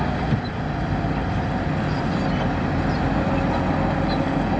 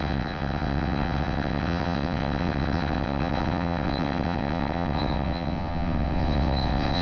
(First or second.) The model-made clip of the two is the second